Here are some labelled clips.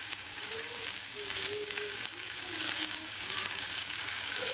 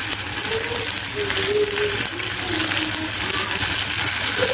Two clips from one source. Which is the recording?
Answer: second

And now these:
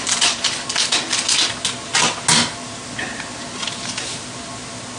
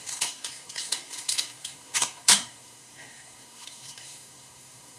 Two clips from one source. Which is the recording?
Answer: first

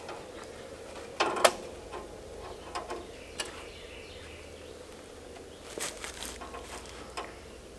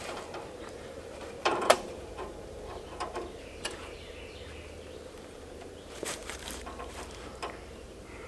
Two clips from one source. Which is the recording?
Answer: first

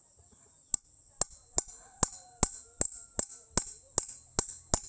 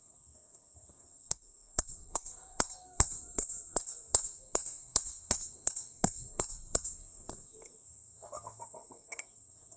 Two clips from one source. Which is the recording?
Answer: first